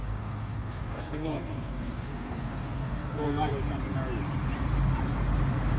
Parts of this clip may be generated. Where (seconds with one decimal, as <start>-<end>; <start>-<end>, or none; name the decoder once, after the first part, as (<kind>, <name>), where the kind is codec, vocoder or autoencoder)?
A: 0.0-3.5 (codec, SNAC)